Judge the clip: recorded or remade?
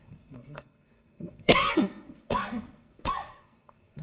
remade